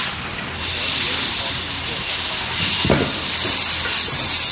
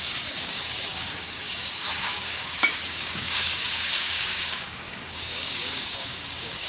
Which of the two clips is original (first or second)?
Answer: first